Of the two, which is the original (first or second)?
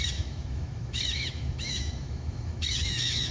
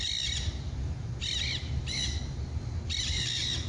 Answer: second